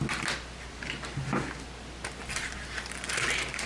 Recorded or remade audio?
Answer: recorded